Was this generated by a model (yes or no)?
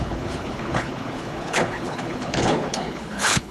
yes